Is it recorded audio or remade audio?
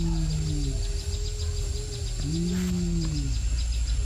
recorded